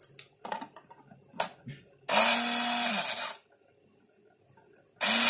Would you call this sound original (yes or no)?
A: yes